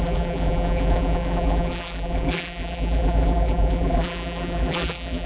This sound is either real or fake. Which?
fake